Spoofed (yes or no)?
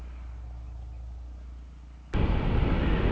no